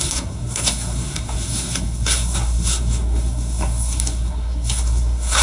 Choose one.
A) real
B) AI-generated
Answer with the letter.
B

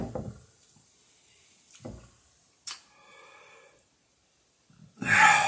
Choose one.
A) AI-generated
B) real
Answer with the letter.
B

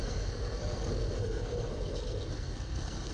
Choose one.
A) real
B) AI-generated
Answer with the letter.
B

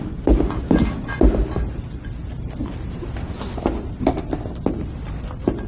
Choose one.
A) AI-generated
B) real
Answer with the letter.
B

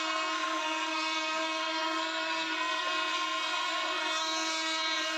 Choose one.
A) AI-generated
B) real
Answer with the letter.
A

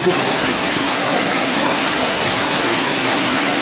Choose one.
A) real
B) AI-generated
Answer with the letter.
B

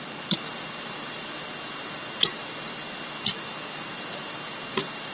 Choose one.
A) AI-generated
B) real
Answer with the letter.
B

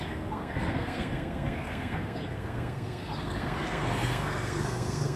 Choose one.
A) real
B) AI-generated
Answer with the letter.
B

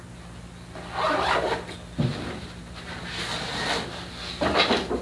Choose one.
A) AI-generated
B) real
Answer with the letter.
B